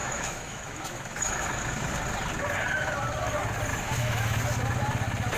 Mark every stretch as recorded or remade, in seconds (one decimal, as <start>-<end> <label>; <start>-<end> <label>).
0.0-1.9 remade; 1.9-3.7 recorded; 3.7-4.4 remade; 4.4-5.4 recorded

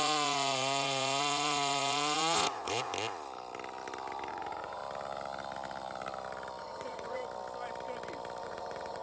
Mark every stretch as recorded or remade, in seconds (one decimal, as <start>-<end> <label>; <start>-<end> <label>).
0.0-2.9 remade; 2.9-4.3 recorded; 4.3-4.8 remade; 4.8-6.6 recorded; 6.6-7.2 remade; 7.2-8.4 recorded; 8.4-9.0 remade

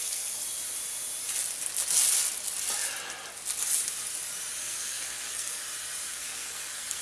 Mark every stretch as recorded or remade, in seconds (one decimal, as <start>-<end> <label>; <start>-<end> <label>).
0.0-0.4 remade; 0.4-4.6 recorded; 4.6-5.6 remade; 5.6-6.1 recorded; 6.1-7.0 remade

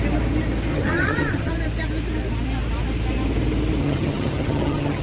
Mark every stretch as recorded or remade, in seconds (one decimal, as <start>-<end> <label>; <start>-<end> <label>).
0.0-0.7 recorded; 0.7-1.5 remade; 1.5-3.8 recorded; 3.8-5.0 remade

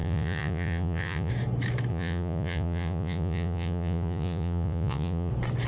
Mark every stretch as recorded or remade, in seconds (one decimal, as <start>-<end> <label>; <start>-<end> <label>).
0.0-1.3 remade; 1.3-1.9 recorded; 1.9-5.3 remade; 5.3-5.7 recorded

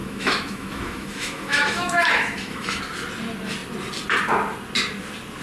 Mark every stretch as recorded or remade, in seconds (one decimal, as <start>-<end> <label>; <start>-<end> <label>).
0.0-2.8 remade; 2.8-5.4 recorded

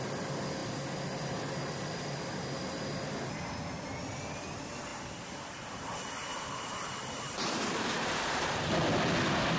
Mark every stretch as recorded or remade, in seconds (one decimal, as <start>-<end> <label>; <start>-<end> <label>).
0.0-6.3 recorded; 6.3-8.7 remade; 8.7-9.6 recorded